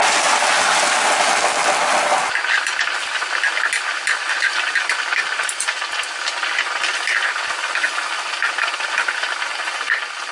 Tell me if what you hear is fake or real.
real